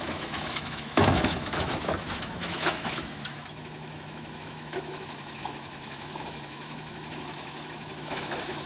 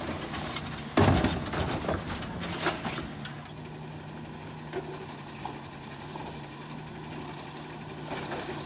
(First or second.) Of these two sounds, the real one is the second